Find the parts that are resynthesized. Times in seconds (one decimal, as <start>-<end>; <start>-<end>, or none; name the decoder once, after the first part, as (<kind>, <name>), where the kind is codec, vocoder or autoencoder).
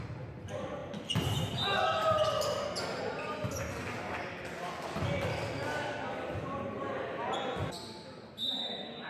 none